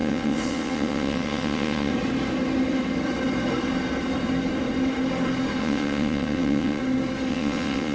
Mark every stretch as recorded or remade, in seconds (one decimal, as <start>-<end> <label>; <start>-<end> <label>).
0.0-1.9 remade; 1.9-5.6 recorded; 5.6-6.8 remade; 6.8-7.3 recorded; 7.3-7.9 remade